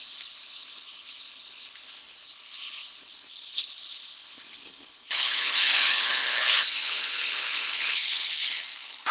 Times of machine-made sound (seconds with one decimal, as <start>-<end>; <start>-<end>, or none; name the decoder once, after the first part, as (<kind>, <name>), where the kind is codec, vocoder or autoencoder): 0.0-9.1 (codec, HILCodec)